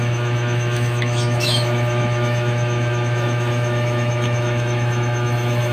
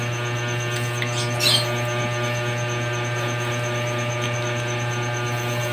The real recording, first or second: second